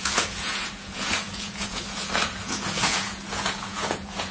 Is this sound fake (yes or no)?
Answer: yes